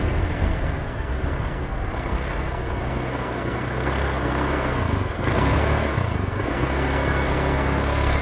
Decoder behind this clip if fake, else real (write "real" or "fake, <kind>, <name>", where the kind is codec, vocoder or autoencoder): fake, codec, SNAC